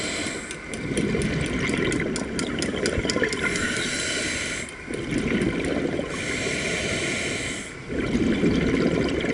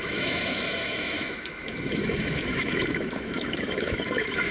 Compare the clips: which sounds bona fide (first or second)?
first